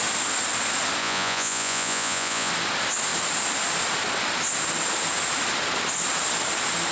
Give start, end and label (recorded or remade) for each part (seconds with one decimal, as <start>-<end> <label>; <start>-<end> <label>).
0.0-1.0 recorded; 1.0-2.5 remade; 2.5-6.9 recorded